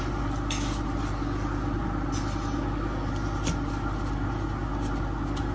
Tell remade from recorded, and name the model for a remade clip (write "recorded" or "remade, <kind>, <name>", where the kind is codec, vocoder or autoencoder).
recorded